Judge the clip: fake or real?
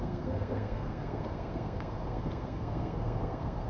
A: fake